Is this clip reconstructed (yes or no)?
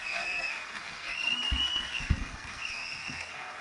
yes